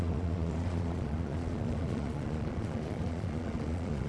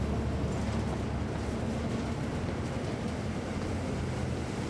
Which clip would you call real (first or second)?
second